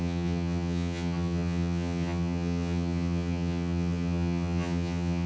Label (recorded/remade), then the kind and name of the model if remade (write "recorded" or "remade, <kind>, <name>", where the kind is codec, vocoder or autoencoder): remade, vocoder, HiFi-GAN